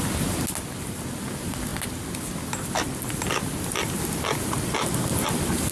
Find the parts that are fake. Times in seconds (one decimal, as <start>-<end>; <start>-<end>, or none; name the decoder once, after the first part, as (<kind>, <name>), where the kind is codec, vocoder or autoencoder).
none

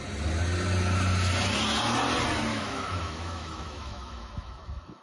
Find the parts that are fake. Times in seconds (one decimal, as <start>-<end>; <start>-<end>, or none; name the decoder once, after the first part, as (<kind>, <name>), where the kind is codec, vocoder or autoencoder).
2.5-5.0 (autoencoder, DAC-VAE)

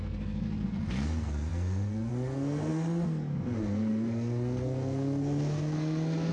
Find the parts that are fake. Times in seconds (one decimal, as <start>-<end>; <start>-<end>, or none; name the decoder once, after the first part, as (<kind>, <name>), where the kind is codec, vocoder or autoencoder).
0.0-6.3 (codec, SNAC)

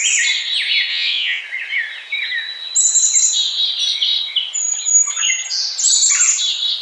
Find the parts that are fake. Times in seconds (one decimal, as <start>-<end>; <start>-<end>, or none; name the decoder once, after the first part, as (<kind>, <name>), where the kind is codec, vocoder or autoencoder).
0.9-1.4 (vocoder, WaveNeXt)

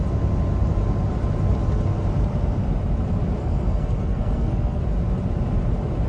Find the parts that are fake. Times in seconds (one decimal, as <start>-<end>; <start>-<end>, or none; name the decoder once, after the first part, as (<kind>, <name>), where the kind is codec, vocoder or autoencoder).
3.4-4.8 (codec, SNAC)

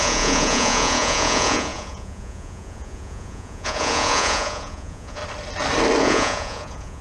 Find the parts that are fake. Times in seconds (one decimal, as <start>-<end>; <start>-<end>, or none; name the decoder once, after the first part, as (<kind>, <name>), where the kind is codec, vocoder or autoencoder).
0.0-5.2 (vocoder, Vocos); 6.0-7.0